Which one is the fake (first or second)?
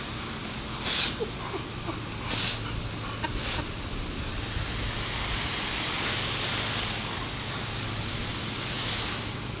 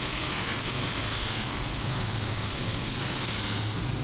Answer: second